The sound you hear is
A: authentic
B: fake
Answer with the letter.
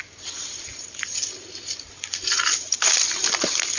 A